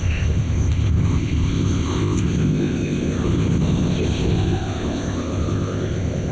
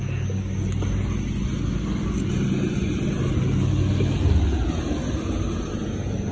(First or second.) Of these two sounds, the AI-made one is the first